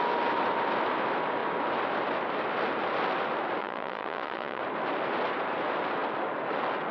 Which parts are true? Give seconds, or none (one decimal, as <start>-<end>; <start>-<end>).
0.0-3.6; 4.6-6.9